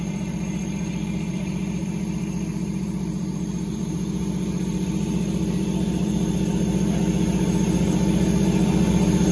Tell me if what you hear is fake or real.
fake